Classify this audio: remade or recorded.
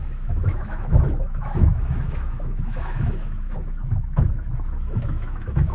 remade